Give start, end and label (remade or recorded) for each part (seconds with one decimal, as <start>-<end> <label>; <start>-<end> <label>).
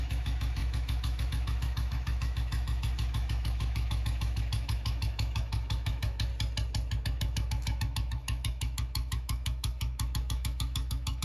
0.0-6.3 remade; 6.3-7.0 recorded; 7.0-11.2 remade